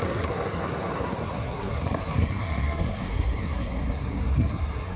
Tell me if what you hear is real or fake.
fake